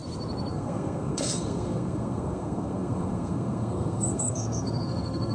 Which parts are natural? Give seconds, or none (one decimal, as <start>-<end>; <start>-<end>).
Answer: 0.0-0.5